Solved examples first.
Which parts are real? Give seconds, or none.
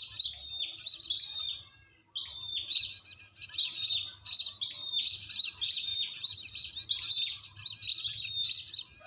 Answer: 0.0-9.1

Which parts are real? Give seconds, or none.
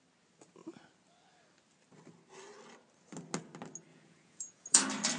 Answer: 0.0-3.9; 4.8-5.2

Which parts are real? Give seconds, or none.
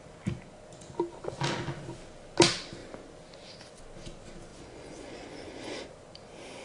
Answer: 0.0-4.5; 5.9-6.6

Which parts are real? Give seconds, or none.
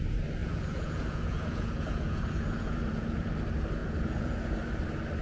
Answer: 0.0-0.4; 3.3-3.8; 4.6-5.2